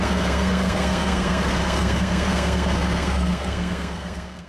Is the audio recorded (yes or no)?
no